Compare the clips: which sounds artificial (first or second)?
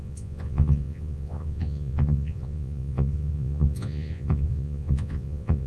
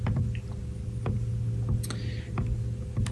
first